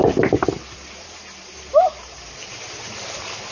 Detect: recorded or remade recorded